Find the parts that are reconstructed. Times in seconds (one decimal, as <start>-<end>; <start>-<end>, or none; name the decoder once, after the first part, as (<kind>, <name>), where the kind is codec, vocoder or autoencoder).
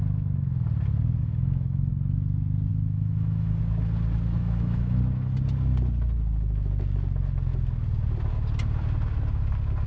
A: 1.2-1.9 (autoencoder, DAC-VAE); 2.7-3.6; 4.4-5.0